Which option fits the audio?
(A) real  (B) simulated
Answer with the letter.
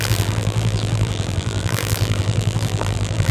B